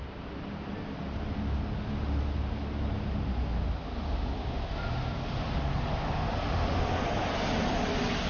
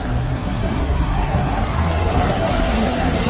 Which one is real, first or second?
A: first